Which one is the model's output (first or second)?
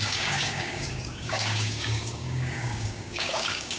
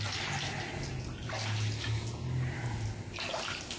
first